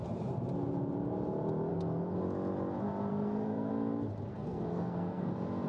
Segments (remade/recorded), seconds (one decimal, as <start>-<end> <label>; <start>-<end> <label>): 0.0-1.7 recorded; 1.7-2.2 remade; 2.2-3.1 recorded; 3.1-3.7 remade; 3.7-4.3 recorded; 4.3-5.3 remade; 5.3-5.7 recorded